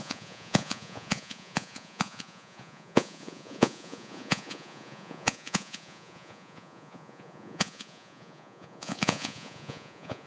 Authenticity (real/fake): fake